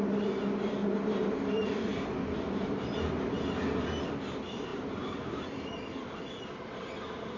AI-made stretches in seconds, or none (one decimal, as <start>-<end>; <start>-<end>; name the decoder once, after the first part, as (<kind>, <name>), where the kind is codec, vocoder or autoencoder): 0.8-1.4 (vocoder, BigVGAN v2); 4.7-5.4